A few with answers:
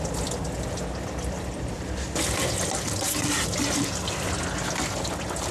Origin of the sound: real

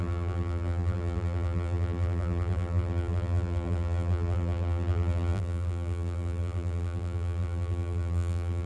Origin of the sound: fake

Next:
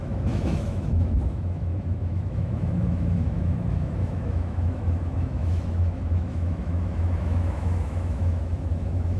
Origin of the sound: fake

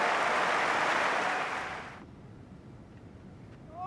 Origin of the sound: real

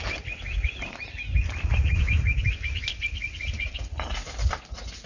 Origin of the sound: real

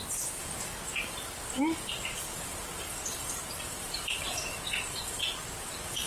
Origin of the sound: real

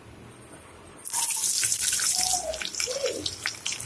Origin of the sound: real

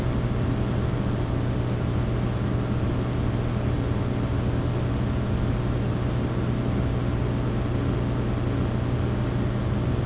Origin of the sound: real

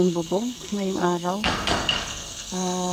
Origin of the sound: fake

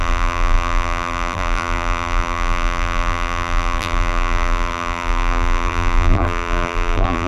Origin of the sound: fake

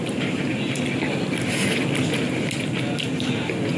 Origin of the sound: real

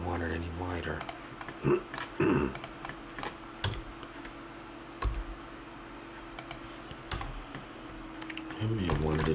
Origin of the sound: real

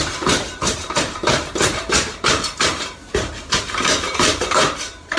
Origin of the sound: fake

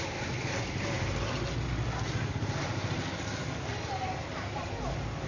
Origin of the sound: real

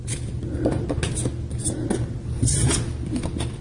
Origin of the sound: real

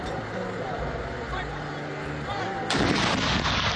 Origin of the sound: real